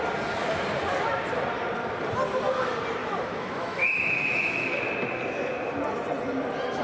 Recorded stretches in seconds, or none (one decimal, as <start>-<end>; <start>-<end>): 0.0-3.0; 4.8-6.8